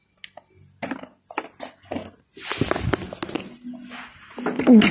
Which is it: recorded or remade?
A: recorded